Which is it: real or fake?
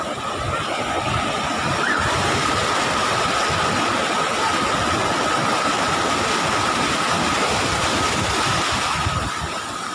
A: real